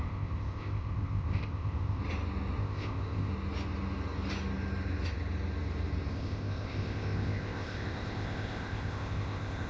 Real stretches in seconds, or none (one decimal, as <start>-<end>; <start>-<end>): 2.0-2.6; 3.3-6.1